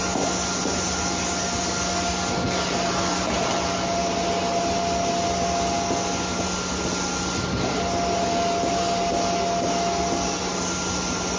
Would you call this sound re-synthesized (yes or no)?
no